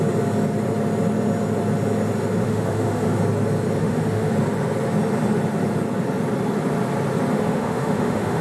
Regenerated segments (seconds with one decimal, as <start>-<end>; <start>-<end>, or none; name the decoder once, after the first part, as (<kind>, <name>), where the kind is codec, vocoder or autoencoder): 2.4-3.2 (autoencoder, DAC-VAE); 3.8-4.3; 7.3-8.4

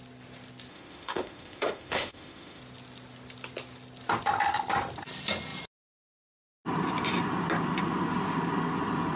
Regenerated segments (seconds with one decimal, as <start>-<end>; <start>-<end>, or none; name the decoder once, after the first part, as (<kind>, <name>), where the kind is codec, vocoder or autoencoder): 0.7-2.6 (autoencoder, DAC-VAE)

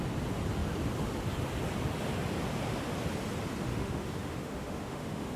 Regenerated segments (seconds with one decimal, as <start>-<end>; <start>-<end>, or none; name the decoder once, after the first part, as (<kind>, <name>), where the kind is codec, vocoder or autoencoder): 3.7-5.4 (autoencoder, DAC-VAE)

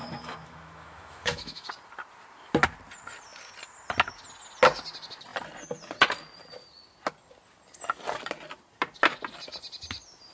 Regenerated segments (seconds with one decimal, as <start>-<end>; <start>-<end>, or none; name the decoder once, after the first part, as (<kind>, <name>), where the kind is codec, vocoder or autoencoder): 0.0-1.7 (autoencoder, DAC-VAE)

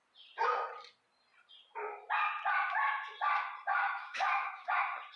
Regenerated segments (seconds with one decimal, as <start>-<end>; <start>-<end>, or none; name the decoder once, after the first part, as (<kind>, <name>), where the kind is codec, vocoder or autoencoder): 3.7-4.7 (autoencoder, DAC-VAE)

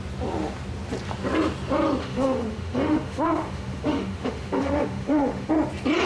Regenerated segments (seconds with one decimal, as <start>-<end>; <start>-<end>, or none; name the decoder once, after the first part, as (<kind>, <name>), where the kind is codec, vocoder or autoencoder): 2.0-5.5 (autoencoder, DAC-VAE)